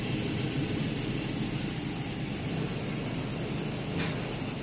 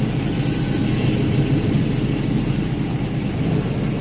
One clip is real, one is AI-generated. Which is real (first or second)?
second